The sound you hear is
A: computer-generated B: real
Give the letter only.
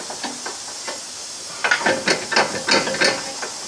B